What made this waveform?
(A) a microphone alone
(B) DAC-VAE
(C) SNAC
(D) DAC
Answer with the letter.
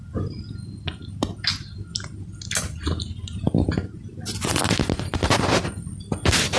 A